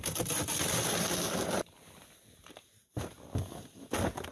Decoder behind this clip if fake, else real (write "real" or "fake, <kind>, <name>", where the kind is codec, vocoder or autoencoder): real